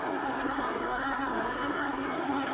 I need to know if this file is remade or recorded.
remade